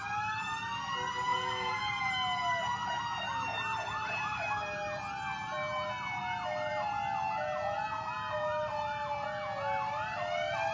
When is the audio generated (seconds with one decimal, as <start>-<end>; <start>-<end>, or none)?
1.3-2.1